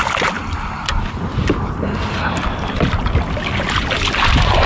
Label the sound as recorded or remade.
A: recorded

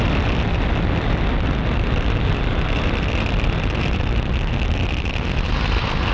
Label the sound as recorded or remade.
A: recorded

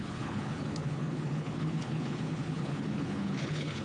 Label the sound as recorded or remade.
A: remade